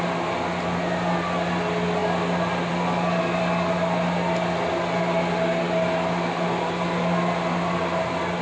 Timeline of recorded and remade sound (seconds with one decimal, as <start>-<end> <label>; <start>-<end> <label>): 0.0-8.4 recorded

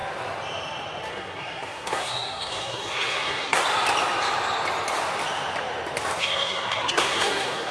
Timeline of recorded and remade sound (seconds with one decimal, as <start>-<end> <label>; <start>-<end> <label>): 0.0-1.1 recorded; 1.1-3.6 remade; 3.6-6.2 recorded; 6.2-7.7 remade

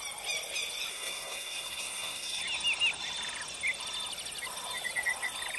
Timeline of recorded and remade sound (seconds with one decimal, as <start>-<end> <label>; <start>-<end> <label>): 0.0-0.9 recorded; 0.9-2.4 remade; 2.4-5.6 recorded

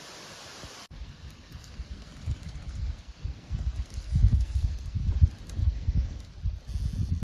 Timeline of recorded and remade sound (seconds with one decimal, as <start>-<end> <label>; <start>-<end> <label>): 0.0-0.8 recorded; 0.8-5.1 remade; 5.1-5.6 recorded; 5.6-6.3 remade; 6.3-7.2 recorded

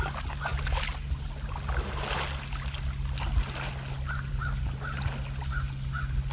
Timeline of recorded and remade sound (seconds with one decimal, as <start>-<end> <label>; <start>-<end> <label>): 0.0-6.3 recorded

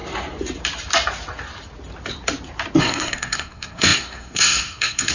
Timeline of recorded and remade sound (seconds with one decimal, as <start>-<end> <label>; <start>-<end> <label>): 0.0-2.8 recorded; 2.8-5.1 remade

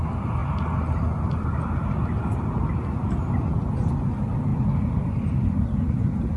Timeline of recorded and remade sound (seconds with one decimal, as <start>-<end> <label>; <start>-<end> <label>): 0.0-6.4 recorded

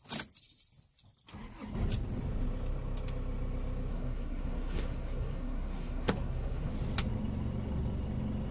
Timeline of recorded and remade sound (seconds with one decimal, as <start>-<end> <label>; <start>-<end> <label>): 0.0-3.9 recorded; 3.9-6.7 remade; 6.7-8.5 recorded